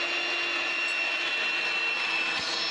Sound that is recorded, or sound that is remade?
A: recorded